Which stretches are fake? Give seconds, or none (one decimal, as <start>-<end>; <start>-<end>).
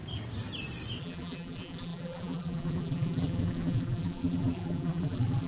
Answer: 1.0-5.5